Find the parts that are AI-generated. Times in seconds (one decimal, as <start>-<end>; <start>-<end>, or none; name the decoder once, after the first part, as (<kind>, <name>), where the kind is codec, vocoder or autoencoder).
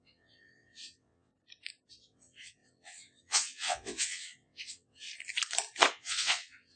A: 0.0-1.3 (vocoder, WaveNeXt); 1.9-5.1; 5.9-6.8